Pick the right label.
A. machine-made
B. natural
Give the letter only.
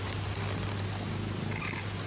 B